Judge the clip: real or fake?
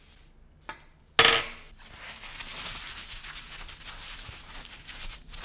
real